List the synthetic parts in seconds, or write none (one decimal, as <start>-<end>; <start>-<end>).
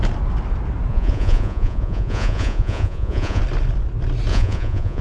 0.9-3.4; 4.3-5.0